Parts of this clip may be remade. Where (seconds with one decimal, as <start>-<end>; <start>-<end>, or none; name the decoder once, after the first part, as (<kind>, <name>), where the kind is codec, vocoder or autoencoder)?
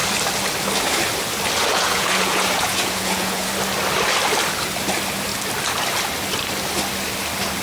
1.7-3.5 (vocoder, Vocos)